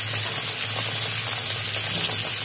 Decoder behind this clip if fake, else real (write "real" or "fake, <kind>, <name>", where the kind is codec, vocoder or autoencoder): real